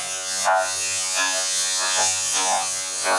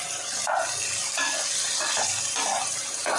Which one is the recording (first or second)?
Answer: second